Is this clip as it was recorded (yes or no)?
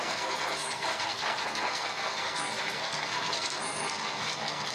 no